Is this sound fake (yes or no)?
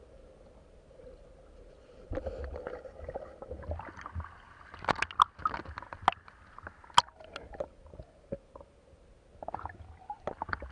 no